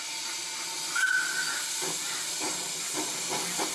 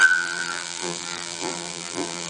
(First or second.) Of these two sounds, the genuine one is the first